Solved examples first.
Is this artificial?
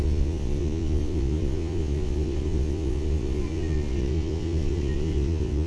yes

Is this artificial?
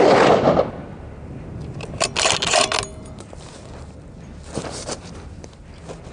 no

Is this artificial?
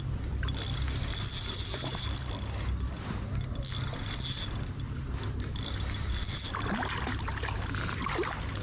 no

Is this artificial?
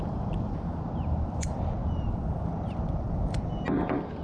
no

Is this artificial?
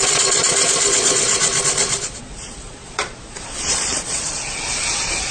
yes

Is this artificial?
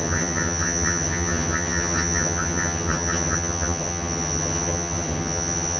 yes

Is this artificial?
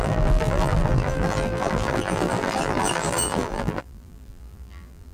yes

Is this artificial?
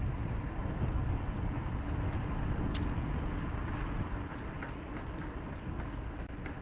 no